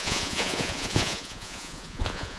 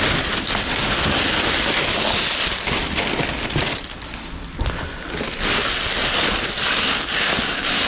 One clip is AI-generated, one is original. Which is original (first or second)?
second